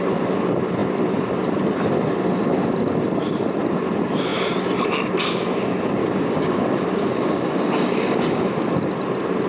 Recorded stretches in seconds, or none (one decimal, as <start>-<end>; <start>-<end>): 0.0-6.0; 8.5-9.5